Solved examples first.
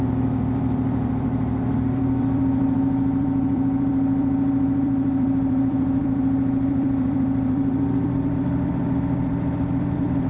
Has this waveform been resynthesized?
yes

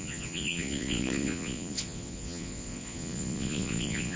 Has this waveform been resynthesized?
yes